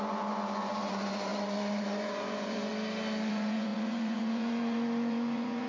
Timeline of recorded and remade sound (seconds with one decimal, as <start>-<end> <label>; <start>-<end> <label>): 0.0-2.7 remade; 2.7-3.3 recorded; 3.3-5.7 remade